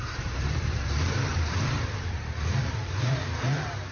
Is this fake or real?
fake